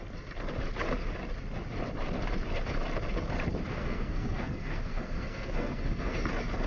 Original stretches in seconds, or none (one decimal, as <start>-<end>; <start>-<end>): 0.0-3.7; 6.2-6.7